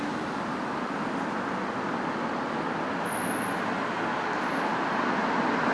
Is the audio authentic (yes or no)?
yes